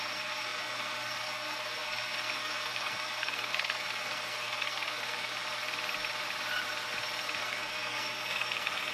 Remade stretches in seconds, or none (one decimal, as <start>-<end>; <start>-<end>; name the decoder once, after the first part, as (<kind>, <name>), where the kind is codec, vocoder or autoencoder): 0.0-5.3 (codec, SNAC); 7.4-8.9